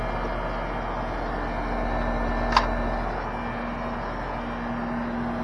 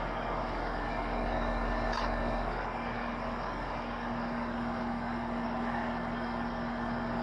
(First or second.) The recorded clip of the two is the first